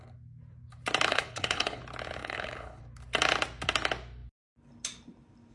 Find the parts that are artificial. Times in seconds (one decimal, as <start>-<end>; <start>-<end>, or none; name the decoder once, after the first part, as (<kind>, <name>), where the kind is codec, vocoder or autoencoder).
1.1-1.8 (codec, HILCodec); 2.2-2.8